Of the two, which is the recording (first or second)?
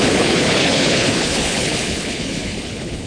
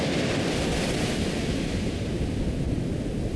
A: second